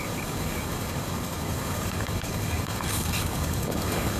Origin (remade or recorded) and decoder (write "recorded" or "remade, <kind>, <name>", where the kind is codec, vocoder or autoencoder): remade, codec, DAC